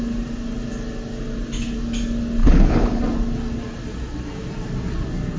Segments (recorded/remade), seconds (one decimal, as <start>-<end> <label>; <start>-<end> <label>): 0.0-2.4 recorded; 2.4-3.0 remade; 3.0-5.4 recorded